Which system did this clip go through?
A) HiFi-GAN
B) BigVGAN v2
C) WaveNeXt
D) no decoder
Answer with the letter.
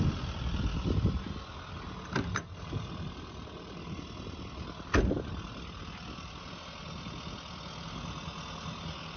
D